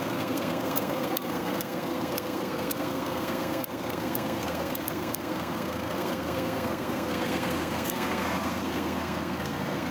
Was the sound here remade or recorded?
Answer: remade